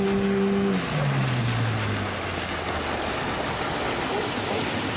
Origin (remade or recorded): recorded